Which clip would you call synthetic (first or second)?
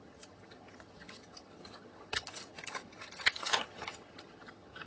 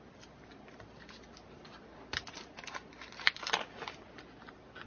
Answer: first